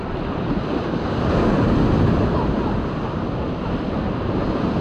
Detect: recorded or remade recorded